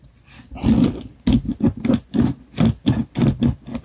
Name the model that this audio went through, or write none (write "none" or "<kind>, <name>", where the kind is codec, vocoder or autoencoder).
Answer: none